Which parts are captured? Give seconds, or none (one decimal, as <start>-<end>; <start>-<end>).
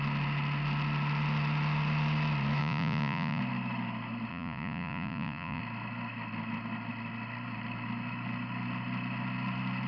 0.0-2.6; 3.4-4.3; 5.6-9.9